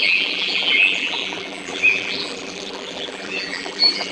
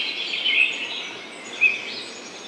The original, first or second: second